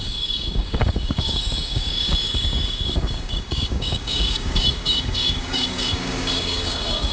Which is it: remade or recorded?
remade